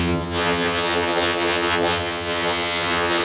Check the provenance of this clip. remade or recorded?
remade